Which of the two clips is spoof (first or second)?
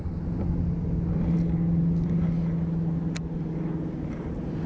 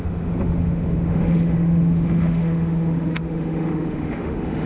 second